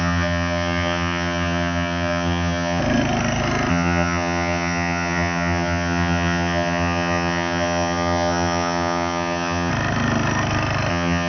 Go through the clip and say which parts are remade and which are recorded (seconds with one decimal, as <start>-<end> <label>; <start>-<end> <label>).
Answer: 0.0-2.8 remade; 2.8-3.7 recorded; 3.7-9.7 remade; 9.7-10.9 recorded; 10.9-11.3 remade